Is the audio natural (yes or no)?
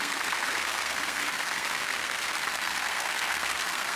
no